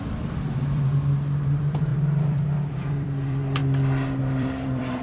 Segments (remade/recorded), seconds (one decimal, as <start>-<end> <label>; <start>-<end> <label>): 0.0-3.6 remade; 3.6-4.2 recorded; 4.2-5.0 remade